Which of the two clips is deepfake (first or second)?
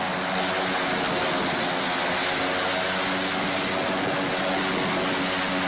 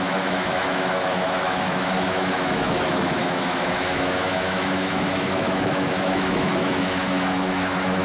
second